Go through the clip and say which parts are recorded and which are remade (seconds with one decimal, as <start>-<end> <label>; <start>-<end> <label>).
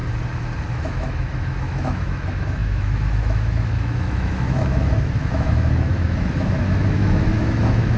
0.0-0.7 recorded; 0.7-8.0 remade